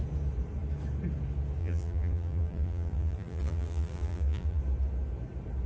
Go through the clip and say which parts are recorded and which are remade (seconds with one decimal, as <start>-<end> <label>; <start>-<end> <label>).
0.0-1.6 recorded; 1.6-4.6 remade; 4.6-5.7 recorded